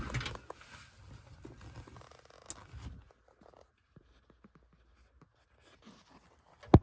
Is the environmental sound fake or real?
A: real